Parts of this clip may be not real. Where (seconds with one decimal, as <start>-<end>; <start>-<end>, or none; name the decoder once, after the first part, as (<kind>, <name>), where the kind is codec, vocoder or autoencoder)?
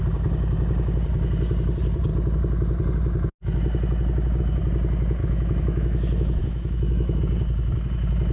5.2-7.2 (autoencoder, DAC-VAE)